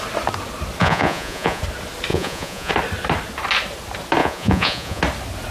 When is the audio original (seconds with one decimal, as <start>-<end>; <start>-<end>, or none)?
0.0-0.8; 1.6-2.1; 2.7-4.2; 5.0-5.5

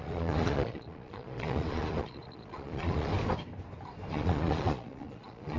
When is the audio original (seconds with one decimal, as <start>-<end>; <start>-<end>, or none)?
3.1-4.1

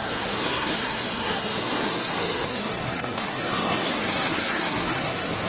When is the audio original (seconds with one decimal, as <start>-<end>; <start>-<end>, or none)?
none